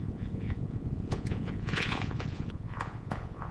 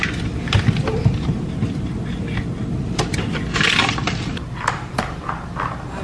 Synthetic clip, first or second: first